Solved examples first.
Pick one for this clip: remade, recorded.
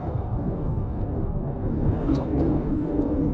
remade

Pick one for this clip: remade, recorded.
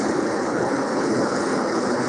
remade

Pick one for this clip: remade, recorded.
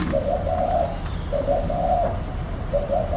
recorded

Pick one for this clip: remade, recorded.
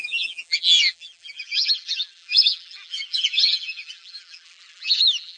remade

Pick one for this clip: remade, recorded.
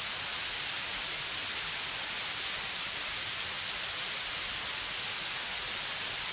recorded